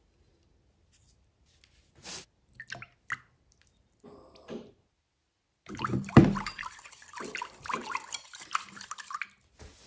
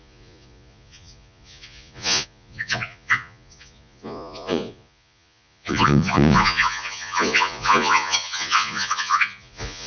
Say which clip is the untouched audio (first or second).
first